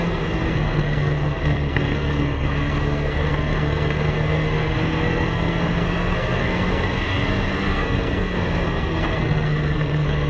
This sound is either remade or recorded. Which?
remade